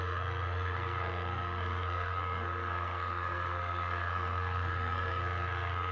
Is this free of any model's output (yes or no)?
no